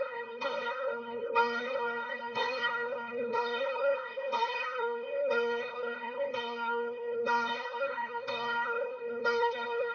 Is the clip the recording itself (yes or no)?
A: no